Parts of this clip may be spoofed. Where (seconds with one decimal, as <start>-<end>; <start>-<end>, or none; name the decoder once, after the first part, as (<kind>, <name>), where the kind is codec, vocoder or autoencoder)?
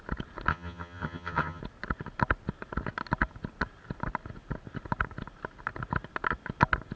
0.5-1.6 (vocoder, HiFi-GAN)